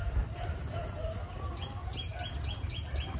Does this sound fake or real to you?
real